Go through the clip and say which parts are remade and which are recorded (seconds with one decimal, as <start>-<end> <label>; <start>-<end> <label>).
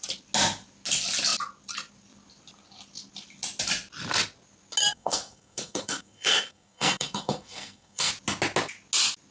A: 0.0-4.8 recorded; 4.8-8.1 remade; 8.1-9.3 recorded